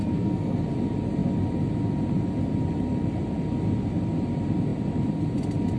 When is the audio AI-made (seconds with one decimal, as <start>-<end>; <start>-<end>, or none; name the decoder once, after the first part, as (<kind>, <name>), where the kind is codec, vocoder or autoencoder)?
0.0-0.6 (codec, SNAC)